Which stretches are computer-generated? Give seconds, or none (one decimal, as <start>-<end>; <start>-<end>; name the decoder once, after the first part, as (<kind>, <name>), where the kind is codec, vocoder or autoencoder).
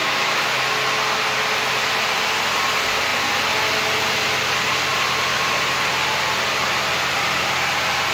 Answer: 0.0-0.6 (autoencoder, DAC-VAE)